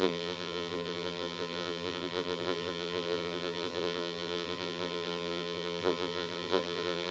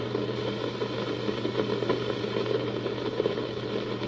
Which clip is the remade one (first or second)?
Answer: first